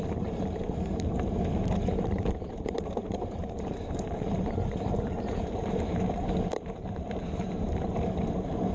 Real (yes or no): no